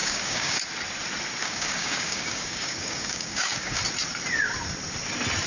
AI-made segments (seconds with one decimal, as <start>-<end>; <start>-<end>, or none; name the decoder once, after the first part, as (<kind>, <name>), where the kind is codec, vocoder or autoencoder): 0.0-0.6 (codec, DAC); 1.4-3.8